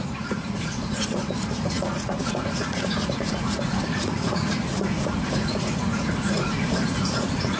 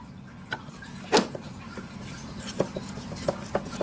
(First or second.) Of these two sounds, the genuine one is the second